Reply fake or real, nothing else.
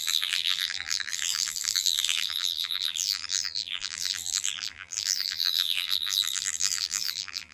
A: fake